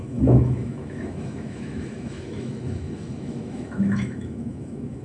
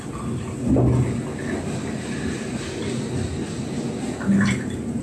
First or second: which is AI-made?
first